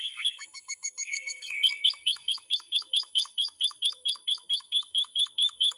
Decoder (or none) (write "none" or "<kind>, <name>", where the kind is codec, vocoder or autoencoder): codec, SNAC